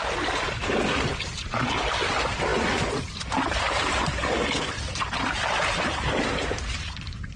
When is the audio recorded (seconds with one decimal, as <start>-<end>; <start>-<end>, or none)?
0.0-0.6; 1.3-2.5; 3.6-7.4